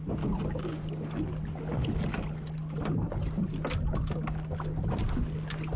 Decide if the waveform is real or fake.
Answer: real